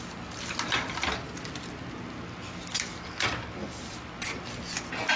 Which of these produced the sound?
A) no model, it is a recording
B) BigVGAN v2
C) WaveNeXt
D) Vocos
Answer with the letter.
A